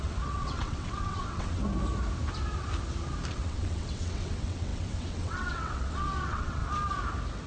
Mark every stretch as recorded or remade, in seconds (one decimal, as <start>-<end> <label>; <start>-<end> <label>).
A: 0.0-1.6 remade; 1.6-3.3 recorded; 3.3-6.6 remade; 6.6-7.5 recorded